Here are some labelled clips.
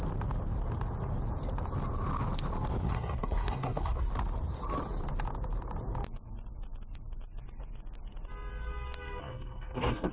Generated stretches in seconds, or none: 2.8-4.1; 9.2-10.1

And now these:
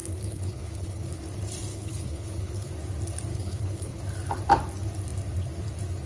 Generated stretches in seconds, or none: 0.0-1.2; 1.7-2.7; 3.3-4.0